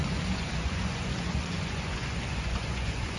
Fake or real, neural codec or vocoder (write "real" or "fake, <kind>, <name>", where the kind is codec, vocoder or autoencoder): fake, vocoder, Vocos